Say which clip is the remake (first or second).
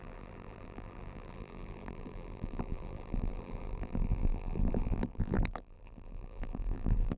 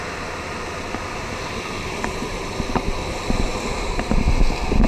first